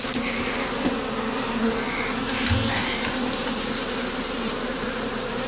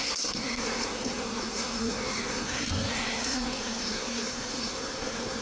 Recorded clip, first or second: first